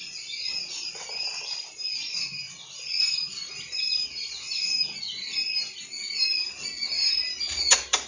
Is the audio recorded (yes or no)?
yes